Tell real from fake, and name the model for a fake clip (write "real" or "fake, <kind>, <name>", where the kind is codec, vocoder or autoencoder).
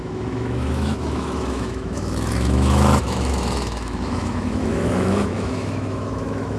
fake, autoencoder, DAC-VAE